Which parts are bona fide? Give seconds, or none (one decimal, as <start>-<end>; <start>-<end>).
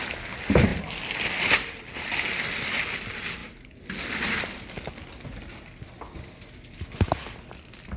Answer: 0.0-8.0